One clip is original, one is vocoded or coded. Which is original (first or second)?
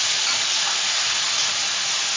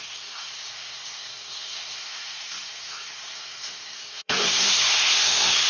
first